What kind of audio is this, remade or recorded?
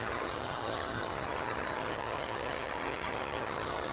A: remade